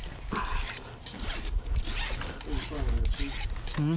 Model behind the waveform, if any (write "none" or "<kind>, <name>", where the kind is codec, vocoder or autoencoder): none